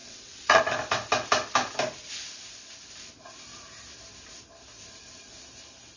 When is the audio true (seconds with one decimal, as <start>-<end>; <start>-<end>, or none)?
0.6-6.0